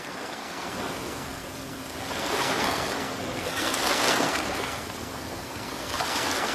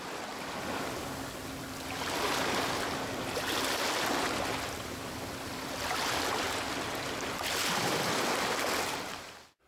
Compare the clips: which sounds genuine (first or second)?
second